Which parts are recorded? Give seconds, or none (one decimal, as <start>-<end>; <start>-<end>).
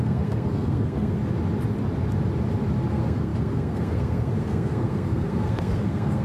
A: 1.2-2.9